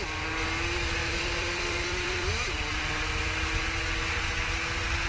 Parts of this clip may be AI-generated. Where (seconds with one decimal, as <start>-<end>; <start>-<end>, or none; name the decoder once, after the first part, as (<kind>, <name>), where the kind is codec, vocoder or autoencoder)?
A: 1.0-3.0 (vocoder, BigVGAN v2)